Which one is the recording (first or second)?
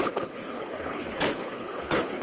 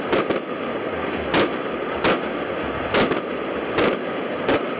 second